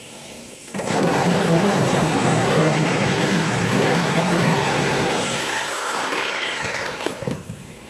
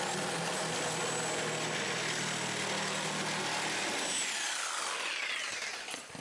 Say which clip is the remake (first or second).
first